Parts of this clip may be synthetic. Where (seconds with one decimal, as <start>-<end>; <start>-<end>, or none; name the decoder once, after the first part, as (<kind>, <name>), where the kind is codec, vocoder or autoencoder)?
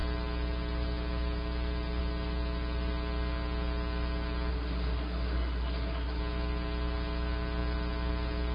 4.5-6.2 (codec, SNAC)